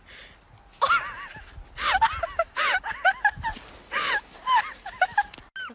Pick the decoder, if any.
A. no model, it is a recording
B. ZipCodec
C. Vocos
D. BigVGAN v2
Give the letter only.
A